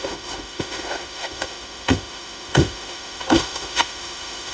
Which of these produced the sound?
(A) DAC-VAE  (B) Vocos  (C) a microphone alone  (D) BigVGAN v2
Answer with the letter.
A